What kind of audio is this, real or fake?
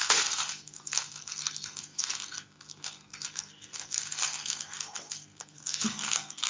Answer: fake